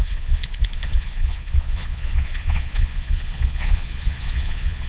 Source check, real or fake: fake